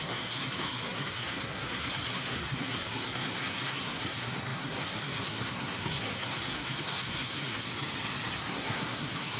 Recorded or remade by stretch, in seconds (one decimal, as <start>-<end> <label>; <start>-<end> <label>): 0.0-7.7 remade; 7.7-8.5 recorded; 8.5-9.4 remade

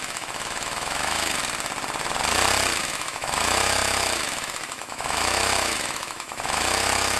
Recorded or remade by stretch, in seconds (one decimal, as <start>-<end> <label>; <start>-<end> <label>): 0.0-1.4 remade; 1.4-2.8 recorded; 2.8-7.2 remade

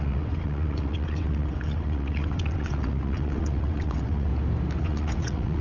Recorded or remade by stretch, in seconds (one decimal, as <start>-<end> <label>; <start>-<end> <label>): 0.0-4.3 remade; 4.3-4.8 recorded; 4.8-5.6 remade